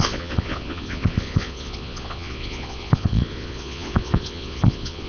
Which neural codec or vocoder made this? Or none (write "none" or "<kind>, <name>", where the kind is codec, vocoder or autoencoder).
vocoder, Vocos